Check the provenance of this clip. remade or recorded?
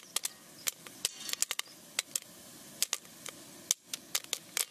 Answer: recorded